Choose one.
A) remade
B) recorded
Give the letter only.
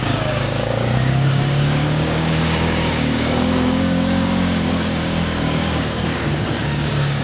A